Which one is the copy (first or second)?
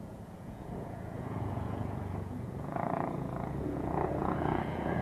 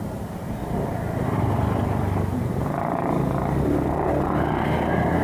first